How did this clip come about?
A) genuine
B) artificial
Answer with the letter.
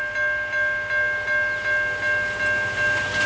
A